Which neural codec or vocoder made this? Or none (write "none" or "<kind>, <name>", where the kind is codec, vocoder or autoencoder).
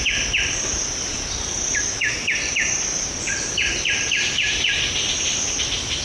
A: vocoder, BigVGAN v2